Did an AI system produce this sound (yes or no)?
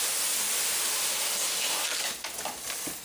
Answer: no